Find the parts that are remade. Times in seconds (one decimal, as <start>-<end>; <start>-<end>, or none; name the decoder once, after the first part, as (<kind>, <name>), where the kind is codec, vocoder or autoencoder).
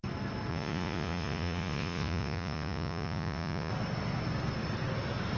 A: 0.5-3.7 (vocoder, Vocos)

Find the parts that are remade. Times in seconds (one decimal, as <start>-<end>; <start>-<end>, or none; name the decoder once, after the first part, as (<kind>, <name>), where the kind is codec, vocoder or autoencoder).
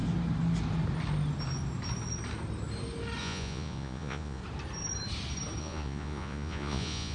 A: 3.2-4.4 (vocoder, Vocos); 5.6-7.1